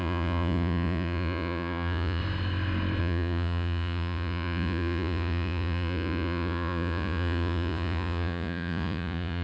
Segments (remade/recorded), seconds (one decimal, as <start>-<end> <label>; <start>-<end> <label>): 0.0-2.2 remade; 2.2-3.0 recorded; 3.0-9.4 remade